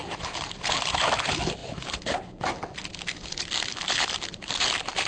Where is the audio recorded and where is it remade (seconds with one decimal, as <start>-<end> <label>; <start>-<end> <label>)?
0.0-0.7 remade; 0.7-1.6 recorded; 1.6-2.9 remade; 2.9-5.1 recorded